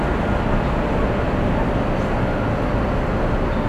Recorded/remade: recorded